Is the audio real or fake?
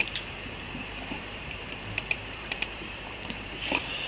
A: fake